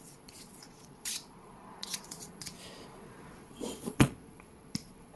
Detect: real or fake fake